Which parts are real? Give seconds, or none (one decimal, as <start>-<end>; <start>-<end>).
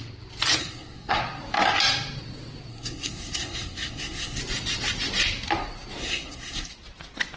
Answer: 0.0-0.6; 1.2-2.7; 4.4-6.0; 6.7-7.4